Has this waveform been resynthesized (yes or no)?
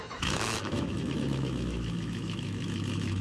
yes